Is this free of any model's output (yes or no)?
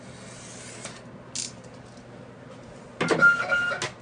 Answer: yes